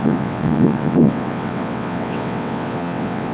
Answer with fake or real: fake